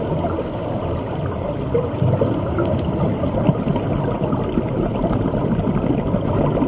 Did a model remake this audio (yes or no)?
no